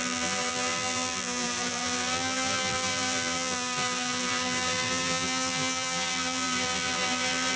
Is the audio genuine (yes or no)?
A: no